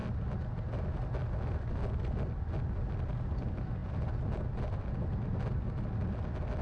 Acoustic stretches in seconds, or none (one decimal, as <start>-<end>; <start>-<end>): 0.0-6.6